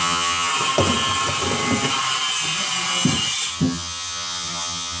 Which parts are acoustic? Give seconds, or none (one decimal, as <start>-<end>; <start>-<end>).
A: 0.5-3.5